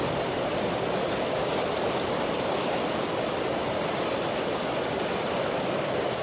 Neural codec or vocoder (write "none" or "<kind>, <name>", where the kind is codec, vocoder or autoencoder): none